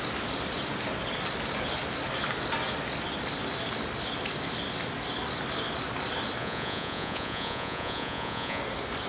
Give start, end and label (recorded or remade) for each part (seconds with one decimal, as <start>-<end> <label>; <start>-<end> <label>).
0.0-6.4 recorded; 6.4-8.6 remade; 8.6-9.1 recorded